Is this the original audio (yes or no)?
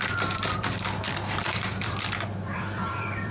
no